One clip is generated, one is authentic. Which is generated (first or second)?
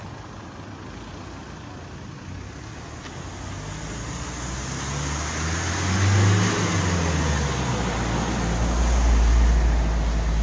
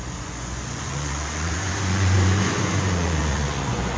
second